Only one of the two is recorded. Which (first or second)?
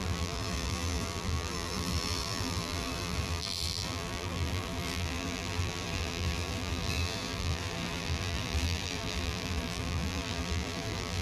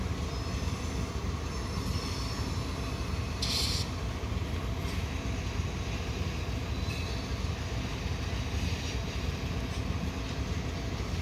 second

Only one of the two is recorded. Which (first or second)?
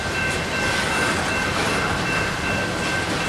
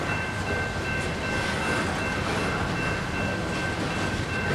second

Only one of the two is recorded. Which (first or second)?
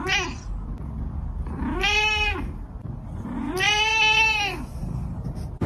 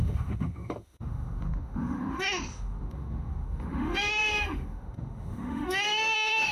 first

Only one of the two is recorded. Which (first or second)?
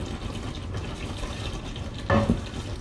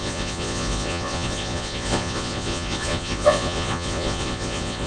first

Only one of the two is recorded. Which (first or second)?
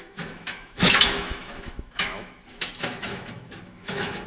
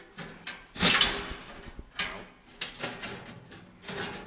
second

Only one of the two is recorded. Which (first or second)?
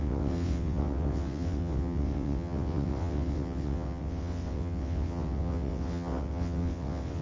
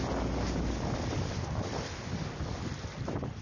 second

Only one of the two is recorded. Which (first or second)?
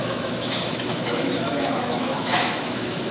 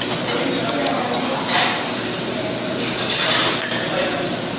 second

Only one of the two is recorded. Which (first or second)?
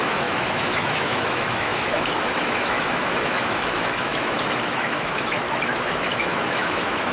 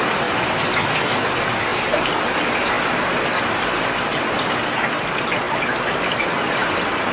second